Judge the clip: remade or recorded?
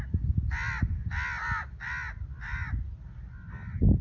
recorded